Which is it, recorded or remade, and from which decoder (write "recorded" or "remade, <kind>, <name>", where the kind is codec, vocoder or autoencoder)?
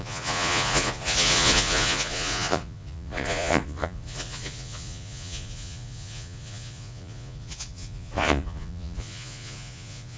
remade, vocoder, Vocos